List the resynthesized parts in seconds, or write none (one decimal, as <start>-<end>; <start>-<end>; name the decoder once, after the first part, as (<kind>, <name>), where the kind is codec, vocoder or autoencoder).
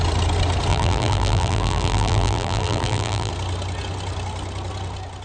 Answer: 0.7-3.3 (vocoder, BigVGAN v2)